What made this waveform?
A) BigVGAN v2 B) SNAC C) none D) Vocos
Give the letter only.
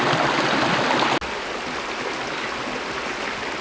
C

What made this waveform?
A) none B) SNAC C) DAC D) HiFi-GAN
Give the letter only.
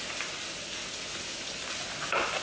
A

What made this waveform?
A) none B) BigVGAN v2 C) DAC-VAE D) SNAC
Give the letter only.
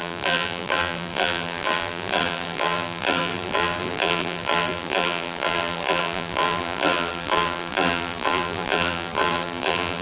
B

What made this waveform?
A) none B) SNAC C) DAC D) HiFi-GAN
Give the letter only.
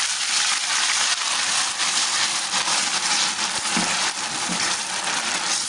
A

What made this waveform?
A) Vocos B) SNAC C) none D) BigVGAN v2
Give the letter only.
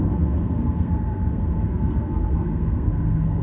B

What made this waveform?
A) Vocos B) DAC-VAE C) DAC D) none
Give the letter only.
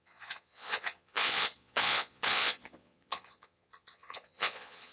A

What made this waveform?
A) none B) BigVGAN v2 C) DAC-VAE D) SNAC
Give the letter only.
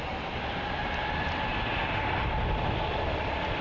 A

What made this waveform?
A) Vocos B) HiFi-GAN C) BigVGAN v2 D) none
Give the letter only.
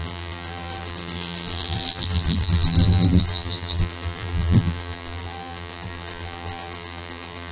C